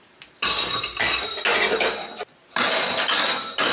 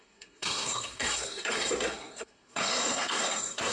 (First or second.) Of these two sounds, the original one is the first